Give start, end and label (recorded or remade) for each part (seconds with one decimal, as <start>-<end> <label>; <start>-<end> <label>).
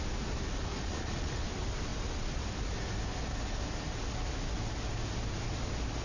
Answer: 0.0-0.7 recorded; 0.7-1.4 remade; 1.4-6.0 recorded